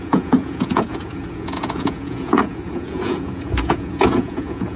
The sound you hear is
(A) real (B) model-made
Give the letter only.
B